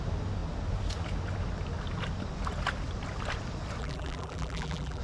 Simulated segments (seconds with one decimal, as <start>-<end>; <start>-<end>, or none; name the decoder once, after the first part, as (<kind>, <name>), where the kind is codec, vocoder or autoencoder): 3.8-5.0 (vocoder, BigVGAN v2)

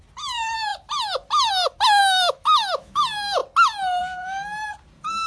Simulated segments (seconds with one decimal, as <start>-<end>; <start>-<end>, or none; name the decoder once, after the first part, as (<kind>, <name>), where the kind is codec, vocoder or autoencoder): 2.0-3.0 (autoencoder, DAC-VAE)

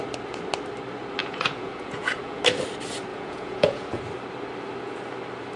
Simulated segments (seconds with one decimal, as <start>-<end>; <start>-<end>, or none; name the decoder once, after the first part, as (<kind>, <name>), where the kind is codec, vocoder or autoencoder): 1.2-2.4 (vocoder, Vocos); 3.1-4.0

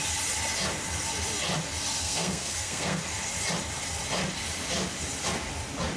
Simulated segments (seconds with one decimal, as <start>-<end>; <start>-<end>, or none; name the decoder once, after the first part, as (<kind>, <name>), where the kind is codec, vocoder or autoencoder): 2.0-3.0 (codec, SNAC)

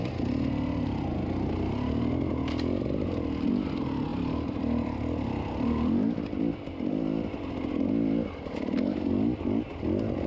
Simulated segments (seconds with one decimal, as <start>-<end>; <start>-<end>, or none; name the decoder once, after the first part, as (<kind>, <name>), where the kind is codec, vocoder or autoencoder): 4.1-7.0 (vocoder, BigVGAN v2)

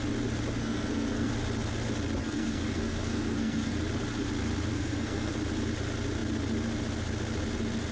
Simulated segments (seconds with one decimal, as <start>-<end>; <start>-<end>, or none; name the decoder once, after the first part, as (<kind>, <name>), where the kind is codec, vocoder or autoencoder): 0.6-1.3 (codec, SNAC); 2.2-3.7; 4.7-5.3